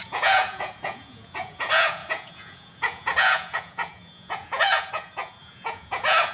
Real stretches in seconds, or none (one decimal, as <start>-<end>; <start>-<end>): none